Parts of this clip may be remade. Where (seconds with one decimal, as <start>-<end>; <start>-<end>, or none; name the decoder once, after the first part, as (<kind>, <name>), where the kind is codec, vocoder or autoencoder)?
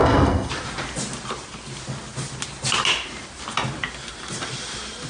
0.0-0.5 (codec, SNAC)